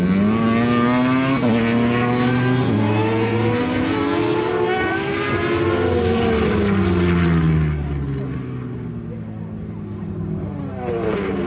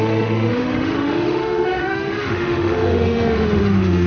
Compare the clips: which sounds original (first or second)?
first